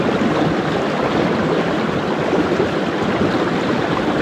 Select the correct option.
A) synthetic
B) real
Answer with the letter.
B